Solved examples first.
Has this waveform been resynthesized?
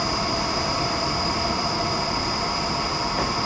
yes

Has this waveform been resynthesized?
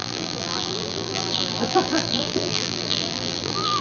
yes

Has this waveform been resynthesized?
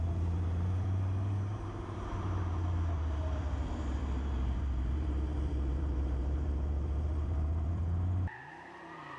yes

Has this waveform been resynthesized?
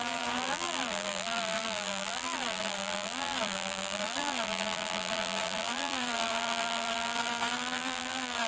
yes